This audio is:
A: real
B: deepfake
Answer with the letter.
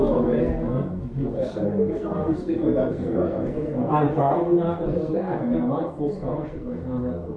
B